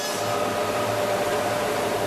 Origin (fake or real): real